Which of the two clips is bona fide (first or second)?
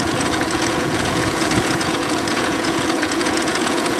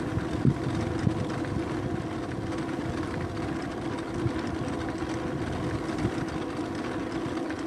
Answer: second